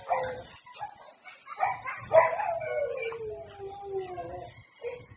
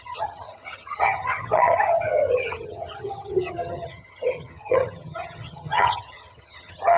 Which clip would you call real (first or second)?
first